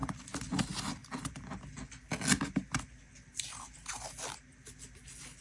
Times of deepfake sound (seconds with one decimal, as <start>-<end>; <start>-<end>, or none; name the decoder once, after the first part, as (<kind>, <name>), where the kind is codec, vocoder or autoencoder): none